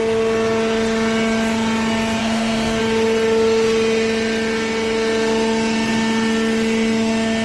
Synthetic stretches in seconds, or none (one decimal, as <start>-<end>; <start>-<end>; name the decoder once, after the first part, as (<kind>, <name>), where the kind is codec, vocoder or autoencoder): 2.2-2.8 (autoencoder, DAC-VAE)